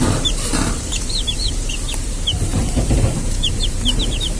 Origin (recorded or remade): remade